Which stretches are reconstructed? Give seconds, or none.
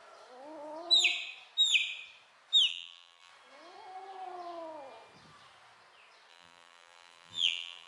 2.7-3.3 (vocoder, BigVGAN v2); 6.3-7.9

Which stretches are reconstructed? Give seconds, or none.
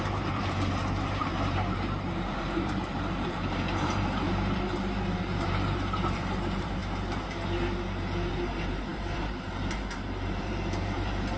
0.0-6.8 (vocoder, BigVGAN v2); 8.3-11.4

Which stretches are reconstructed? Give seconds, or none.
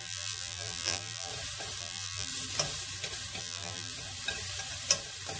0.0-1.3 (vocoder, BigVGAN v2); 1.8-2.3; 3.4-3.9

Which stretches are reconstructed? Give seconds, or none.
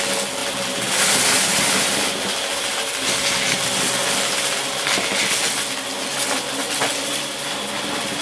0.4-2.7 (vocoder, BigVGAN v2)